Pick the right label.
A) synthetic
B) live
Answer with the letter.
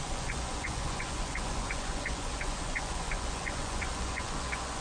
A